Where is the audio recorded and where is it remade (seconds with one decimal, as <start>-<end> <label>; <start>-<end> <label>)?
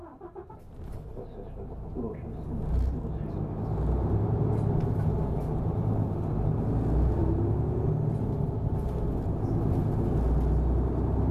0.0-11.3 recorded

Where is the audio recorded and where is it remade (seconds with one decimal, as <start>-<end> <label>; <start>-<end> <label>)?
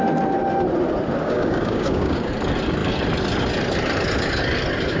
0.0-1.2 recorded; 1.2-2.3 remade; 2.3-5.0 recorded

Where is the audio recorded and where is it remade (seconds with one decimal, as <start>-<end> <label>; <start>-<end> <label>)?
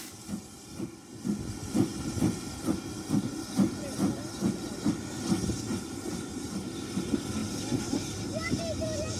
0.0-5.7 recorded; 5.7-6.5 remade; 6.5-7.4 recorded; 7.4-8.6 remade; 8.6-9.2 recorded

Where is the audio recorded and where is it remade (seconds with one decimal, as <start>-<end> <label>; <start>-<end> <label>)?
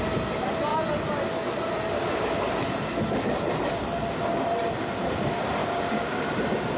0.0-5.6 recorded; 5.6-6.2 remade; 6.2-6.8 recorded